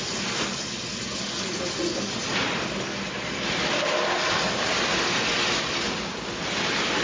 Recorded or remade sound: recorded